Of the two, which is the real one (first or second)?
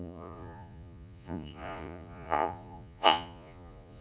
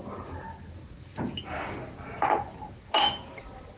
second